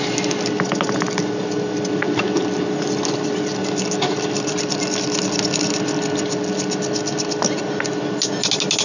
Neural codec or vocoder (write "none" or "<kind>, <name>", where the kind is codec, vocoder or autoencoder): none